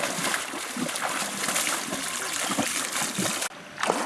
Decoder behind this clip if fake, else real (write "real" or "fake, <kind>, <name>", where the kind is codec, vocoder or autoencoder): real